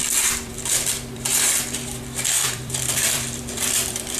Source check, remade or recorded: remade